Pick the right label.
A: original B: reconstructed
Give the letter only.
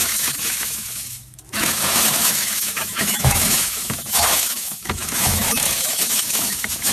B